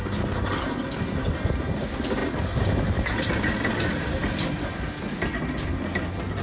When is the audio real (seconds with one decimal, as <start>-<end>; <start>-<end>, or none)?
0.0-6.4